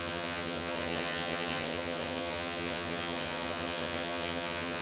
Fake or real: fake